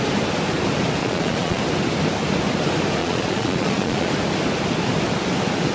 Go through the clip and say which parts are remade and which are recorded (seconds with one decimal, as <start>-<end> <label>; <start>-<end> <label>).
0.0-1.0 recorded; 1.0-1.6 remade; 1.6-3.0 recorded; 3.0-4.1 remade; 4.1-5.7 recorded